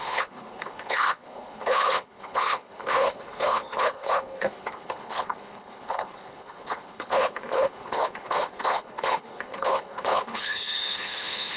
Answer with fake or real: fake